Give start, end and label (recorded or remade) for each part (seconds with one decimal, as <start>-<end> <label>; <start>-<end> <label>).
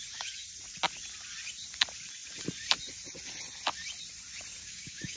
0.0-4.6 recorded; 4.6-5.2 remade